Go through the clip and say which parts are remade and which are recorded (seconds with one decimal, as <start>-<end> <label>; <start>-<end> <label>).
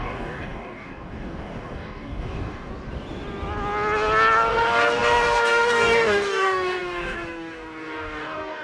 0.0-2.7 remade; 2.7-4.5 recorded; 4.5-8.6 remade